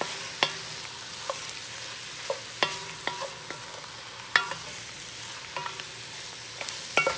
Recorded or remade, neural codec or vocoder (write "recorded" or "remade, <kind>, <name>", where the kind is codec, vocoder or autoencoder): recorded